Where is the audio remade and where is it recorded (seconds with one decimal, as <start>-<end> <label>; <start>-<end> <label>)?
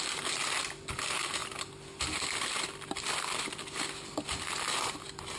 0.0-5.4 recorded